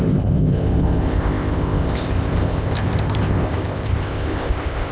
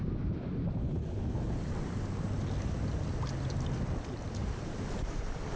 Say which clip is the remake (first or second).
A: first